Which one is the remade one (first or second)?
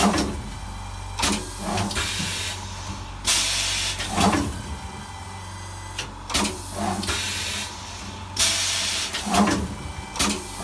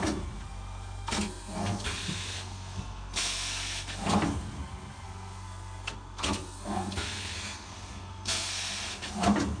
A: second